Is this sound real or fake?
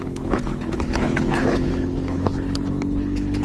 fake